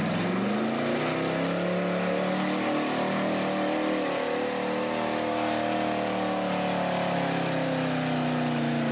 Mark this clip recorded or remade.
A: recorded